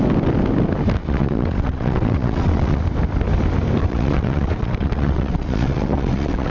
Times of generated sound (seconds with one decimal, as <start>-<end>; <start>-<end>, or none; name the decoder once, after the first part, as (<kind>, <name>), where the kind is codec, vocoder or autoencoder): 1.0-2.8 (vocoder, WaveNeXt); 3.8-6.5